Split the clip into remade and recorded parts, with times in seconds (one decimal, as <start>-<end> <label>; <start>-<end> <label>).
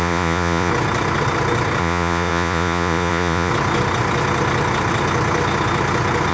0.0-0.7 remade; 0.7-1.8 recorded; 1.8-3.5 remade; 3.5-6.3 recorded